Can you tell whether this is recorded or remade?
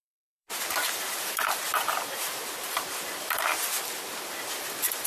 remade